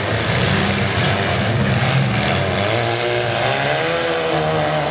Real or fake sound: real